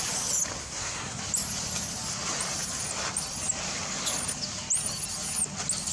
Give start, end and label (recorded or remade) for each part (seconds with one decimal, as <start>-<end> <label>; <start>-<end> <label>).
0.0-0.6 recorded; 0.6-1.2 remade; 1.2-5.9 recorded